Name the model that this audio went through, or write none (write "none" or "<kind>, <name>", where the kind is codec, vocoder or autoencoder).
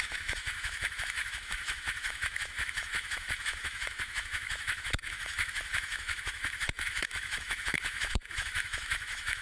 autoencoder, DAC-VAE